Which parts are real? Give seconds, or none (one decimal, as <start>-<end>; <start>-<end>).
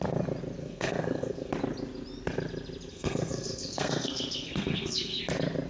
0.0-0.6; 1.5-2.9; 5.2-5.7